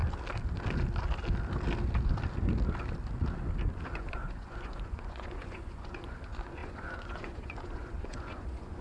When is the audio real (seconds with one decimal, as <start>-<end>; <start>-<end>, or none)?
0.0-3.7